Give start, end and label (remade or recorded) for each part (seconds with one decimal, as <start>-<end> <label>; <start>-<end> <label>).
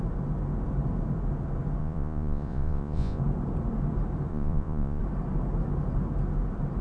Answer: 0.0-1.8 recorded; 1.8-3.2 remade; 3.2-4.3 recorded; 4.3-5.0 remade; 5.0-6.8 recorded